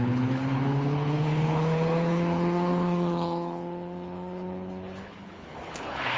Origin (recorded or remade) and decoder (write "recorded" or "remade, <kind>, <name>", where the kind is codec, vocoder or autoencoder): remade, codec, HILCodec